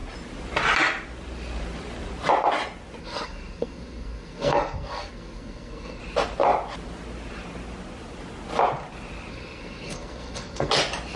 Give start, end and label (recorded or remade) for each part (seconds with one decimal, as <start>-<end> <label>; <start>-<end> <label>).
0.0-3.0 recorded; 3.0-6.0 remade; 6.0-9.3 recorded; 9.3-10.7 remade; 10.7-11.2 recorded